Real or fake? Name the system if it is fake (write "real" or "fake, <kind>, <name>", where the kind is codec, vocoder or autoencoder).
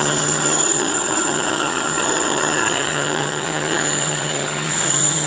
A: fake, vocoder, HiFi-GAN